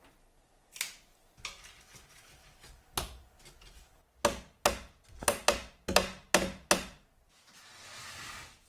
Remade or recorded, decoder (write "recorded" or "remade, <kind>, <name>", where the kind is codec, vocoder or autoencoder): recorded